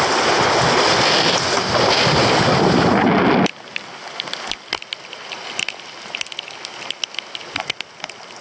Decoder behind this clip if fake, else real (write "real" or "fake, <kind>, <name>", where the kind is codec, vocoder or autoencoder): real